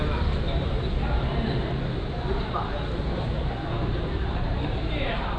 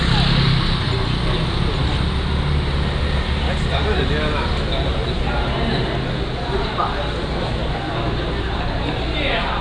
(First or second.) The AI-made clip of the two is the first